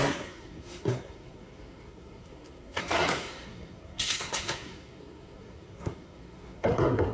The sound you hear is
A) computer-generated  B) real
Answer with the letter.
A